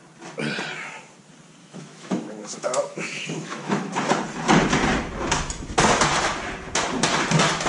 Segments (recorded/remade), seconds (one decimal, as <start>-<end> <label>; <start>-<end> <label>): 0.0-1.6 recorded; 1.6-3.9 remade; 3.9-7.7 recorded